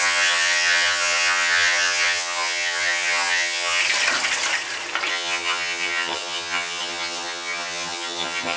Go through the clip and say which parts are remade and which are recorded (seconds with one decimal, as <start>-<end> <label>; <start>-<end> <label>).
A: 0.0-3.8 remade; 3.8-5.1 recorded; 5.1-8.6 remade